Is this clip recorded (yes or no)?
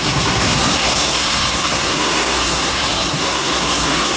no